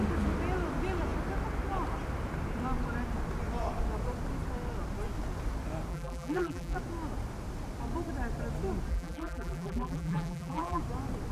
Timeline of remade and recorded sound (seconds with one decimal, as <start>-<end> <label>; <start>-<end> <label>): 0.0-5.9 recorded; 5.9-6.8 remade; 6.8-8.9 recorded; 8.9-10.8 remade; 10.8-11.3 recorded